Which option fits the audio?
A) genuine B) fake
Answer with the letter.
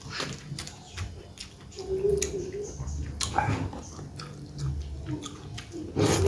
A